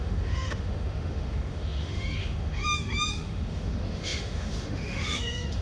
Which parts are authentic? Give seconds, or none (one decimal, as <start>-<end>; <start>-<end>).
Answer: none